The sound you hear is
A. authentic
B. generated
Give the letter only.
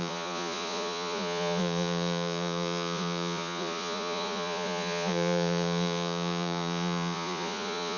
B